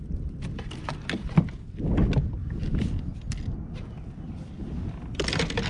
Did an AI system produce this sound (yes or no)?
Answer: no